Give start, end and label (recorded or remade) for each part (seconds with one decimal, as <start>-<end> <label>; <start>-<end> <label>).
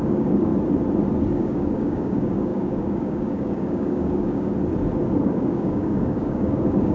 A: 0.0-0.5 remade; 0.5-1.3 recorded; 1.3-4.5 remade; 4.5-5.2 recorded; 5.2-6.9 remade